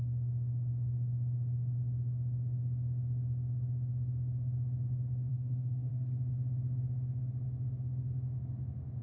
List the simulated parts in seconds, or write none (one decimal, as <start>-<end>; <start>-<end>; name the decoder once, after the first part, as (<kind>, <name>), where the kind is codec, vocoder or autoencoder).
5.3-5.9 (codec, DAC)